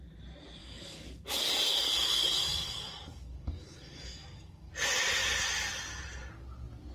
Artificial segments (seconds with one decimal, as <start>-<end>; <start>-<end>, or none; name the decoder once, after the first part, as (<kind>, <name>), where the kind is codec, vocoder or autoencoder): 0.6-4.7 (codec, DAC)